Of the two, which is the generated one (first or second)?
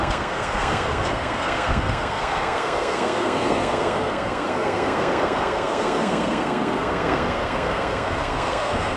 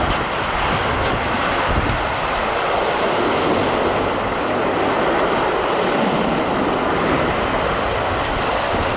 first